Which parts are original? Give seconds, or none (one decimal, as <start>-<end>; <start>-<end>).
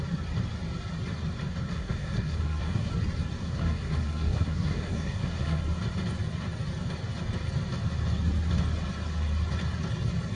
0.0-1.7; 2.9-3.4; 5.6-10.4